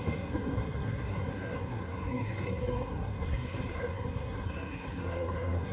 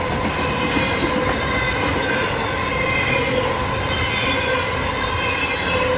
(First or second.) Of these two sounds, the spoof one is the first